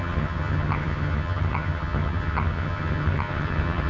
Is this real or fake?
fake